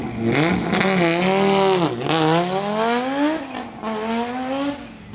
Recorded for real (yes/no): yes